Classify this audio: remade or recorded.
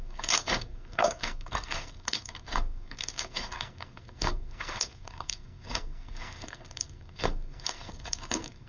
remade